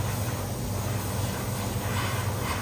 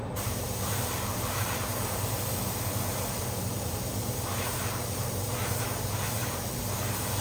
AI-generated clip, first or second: second